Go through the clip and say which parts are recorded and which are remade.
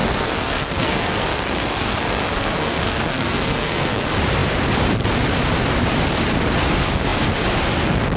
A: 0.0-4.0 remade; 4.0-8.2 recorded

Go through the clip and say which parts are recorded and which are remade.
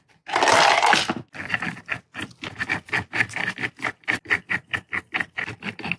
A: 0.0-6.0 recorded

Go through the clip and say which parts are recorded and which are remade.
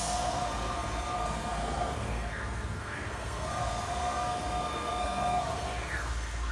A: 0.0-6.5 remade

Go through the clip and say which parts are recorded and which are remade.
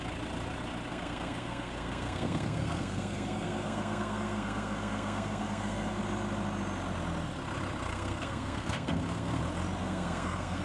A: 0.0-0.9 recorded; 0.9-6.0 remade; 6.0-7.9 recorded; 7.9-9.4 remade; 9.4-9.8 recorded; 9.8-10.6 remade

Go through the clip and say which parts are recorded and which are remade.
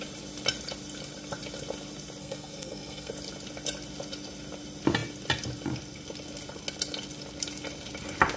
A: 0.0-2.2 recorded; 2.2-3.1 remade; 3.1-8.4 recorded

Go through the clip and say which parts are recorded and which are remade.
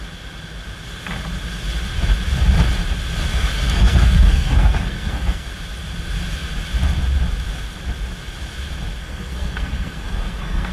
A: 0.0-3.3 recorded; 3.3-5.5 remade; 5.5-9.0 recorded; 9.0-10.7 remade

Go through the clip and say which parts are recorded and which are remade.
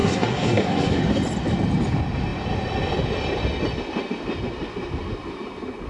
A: 0.0-1.0 remade; 1.0-5.9 recorded